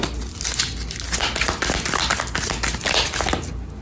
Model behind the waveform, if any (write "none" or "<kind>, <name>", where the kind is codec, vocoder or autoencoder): none